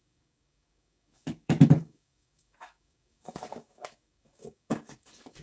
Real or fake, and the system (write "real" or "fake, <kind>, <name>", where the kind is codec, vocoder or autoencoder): fake, codec, DAC